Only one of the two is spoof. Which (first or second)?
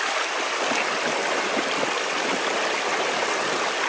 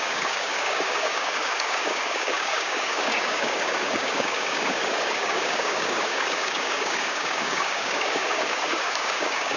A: second